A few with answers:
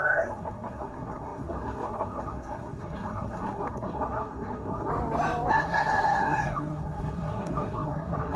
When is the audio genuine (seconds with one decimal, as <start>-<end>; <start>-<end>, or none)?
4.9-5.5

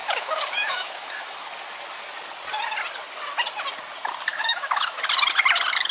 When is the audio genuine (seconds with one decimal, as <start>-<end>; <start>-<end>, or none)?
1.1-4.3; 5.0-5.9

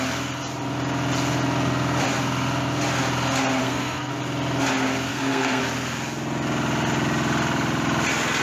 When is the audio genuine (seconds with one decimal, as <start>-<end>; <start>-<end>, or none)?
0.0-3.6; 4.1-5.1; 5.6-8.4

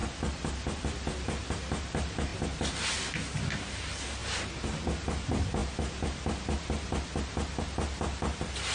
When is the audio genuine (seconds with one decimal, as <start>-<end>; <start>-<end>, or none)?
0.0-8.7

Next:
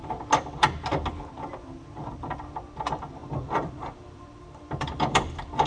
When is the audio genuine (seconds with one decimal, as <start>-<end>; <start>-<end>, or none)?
0.0-3.2

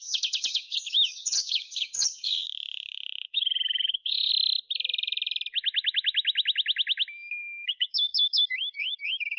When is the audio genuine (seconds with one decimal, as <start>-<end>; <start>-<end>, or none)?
4.3-7.3

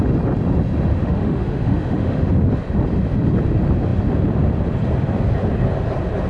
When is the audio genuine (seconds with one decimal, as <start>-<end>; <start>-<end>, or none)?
0.0-0.9; 2.3-6.3

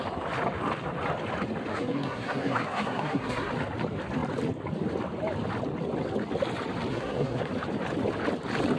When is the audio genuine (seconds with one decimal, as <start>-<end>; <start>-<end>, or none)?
0.0-1.7; 3.5-6.9; 7.5-8.8